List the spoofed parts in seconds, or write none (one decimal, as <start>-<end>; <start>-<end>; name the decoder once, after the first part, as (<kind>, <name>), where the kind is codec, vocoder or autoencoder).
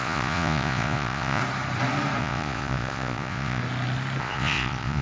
0.0-1.4 (vocoder, Vocos); 2.2-3.6; 4.2-5.0